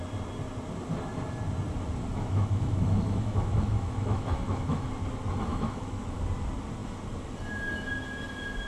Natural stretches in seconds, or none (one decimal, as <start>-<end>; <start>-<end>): 0.0-2.1; 4.9-5.5; 6.2-8.7